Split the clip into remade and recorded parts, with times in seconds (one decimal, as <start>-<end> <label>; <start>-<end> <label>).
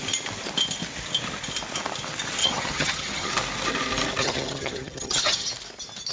0.0-2.4 recorded; 2.4-3.3 remade; 3.3-4.2 recorded; 4.2-5.5 remade; 5.5-6.1 recorded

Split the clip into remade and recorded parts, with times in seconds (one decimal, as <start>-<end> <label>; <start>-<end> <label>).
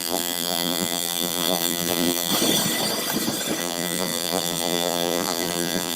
0.0-2.3 remade; 2.3-3.6 recorded; 3.6-6.0 remade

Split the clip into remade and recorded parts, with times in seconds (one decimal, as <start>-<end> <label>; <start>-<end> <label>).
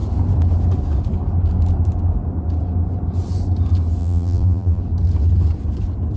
0.0-4.0 recorded; 4.0-4.8 remade; 4.8-6.2 recorded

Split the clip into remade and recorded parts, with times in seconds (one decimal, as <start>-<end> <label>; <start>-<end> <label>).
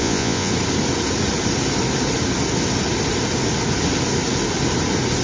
0.0-0.5 remade; 0.5-5.2 recorded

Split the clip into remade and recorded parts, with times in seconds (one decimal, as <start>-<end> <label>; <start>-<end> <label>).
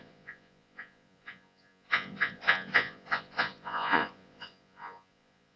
0.0-5.6 remade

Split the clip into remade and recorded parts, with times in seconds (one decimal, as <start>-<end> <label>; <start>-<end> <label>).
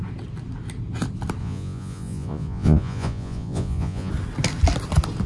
0.0-1.4 recorded; 1.4-4.1 remade; 4.1-5.3 recorded